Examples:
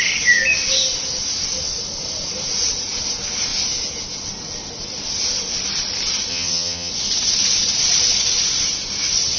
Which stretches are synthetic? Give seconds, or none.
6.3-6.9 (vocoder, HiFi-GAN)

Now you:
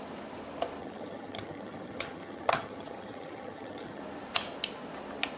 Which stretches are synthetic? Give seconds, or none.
0.8-4.0 (vocoder, HiFi-GAN)

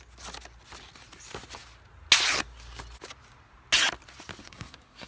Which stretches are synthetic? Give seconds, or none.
4.4-5.1 (codec, SNAC)